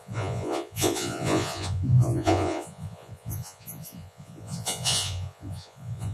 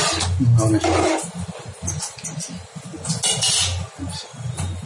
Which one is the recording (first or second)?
second